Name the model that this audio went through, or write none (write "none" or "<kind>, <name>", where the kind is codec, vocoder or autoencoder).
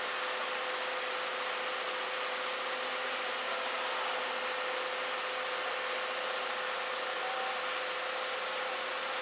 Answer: none